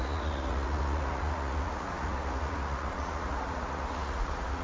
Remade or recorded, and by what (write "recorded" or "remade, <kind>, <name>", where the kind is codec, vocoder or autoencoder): remade, vocoder, Vocos